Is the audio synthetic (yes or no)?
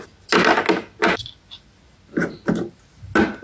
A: no